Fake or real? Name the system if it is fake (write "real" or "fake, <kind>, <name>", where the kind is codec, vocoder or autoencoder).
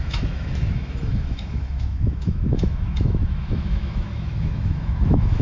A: fake, autoencoder, DAC-VAE